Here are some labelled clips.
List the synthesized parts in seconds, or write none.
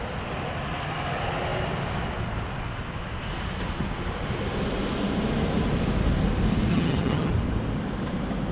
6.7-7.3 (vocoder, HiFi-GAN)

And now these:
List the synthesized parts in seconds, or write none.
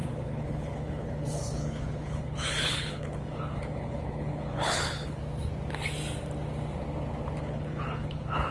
0.0-5.2 (codec, HILCodec); 7.4-8.5